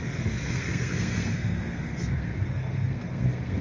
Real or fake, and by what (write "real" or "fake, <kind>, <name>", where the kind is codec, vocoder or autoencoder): fake, codec, SNAC